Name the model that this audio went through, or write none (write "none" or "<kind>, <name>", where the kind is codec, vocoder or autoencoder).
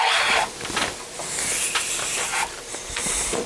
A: none